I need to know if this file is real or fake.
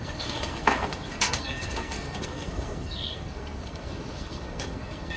fake